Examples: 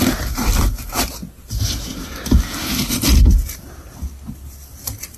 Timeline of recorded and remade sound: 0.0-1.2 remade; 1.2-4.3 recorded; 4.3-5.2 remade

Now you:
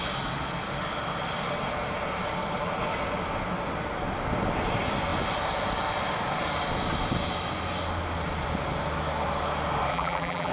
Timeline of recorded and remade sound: 0.0-9.9 recorded; 9.9-10.5 remade

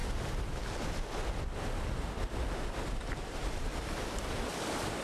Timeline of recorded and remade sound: 0.0-3.0 recorded; 3.0-5.0 remade

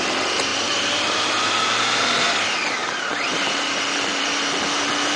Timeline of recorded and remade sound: 0.0-0.5 recorded; 0.5-2.1 remade; 2.1-2.8 recorded; 2.8-3.8 remade; 3.8-5.2 recorded

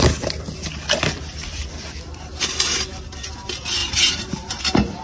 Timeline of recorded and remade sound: 0.0-3.8 recorded; 3.8-4.6 remade; 4.6-5.0 recorded

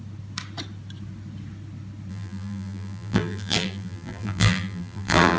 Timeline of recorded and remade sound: 0.0-2.1 recorded; 2.1-5.4 remade